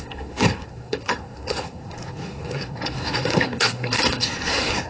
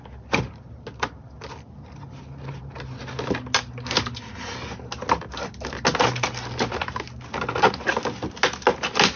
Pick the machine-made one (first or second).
first